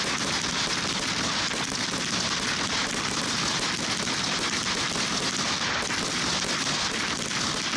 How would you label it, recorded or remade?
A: recorded